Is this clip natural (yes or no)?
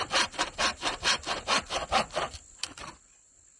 yes